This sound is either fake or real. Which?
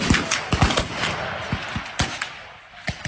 real